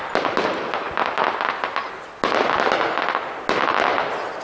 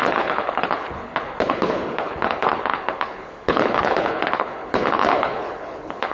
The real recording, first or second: first